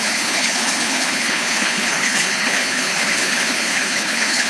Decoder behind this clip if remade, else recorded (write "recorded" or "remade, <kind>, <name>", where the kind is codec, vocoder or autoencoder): remade, codec, HILCodec